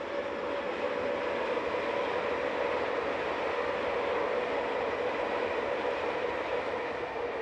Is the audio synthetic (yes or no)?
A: no